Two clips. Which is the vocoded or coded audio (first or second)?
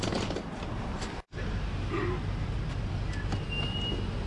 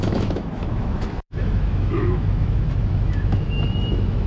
second